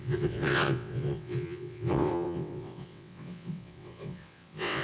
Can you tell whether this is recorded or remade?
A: remade